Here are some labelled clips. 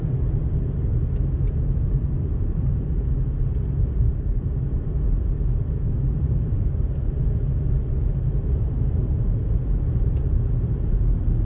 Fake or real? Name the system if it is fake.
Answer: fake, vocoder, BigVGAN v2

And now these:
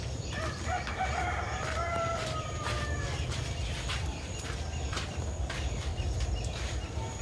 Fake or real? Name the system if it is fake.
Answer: fake, vocoder, BigVGAN v2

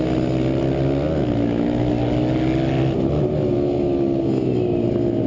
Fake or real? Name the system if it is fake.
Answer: real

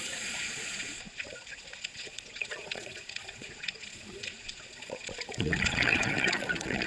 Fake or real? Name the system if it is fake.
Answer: fake, vocoder, Vocos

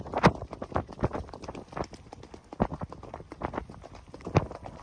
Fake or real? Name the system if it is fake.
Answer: real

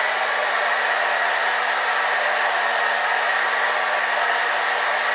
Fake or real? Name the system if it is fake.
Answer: real